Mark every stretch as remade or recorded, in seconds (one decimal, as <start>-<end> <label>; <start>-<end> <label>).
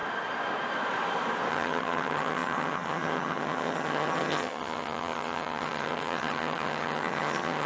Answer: 0.0-1.5 recorded; 1.5-7.7 remade